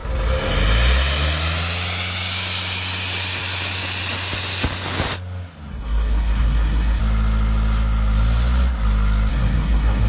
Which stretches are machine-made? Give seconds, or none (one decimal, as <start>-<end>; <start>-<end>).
5.7-7.0; 9.3-10.1